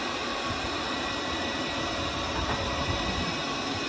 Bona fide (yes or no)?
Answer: no